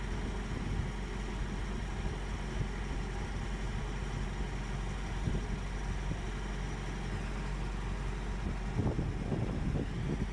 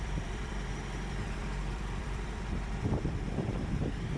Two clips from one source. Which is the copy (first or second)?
second